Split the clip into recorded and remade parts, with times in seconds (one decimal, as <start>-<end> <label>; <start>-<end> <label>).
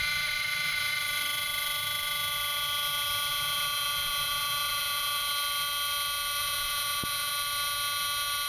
0.0-3.3 recorded; 3.3-5.3 remade; 5.3-6.4 recorded; 6.4-7.3 remade; 7.3-8.5 recorded